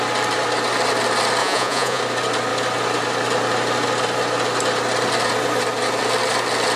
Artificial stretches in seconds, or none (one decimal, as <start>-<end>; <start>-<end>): 1.4-2.0

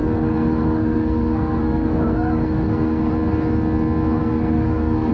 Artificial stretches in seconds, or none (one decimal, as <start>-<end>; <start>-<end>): 0.0-3.1; 4.2-5.1

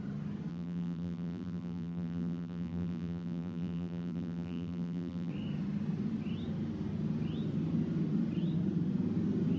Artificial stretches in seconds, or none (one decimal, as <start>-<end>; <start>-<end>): 0.5-5.3

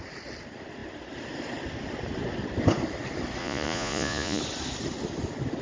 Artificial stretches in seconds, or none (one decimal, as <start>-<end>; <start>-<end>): 3.4-4.4

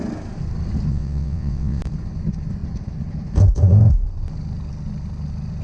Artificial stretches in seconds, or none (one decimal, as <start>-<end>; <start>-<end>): 0.9-1.8

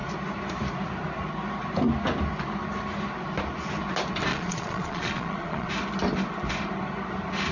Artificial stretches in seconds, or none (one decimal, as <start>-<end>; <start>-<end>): 4.3-5.7

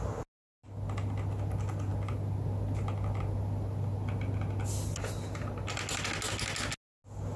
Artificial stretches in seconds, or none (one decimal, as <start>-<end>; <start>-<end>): none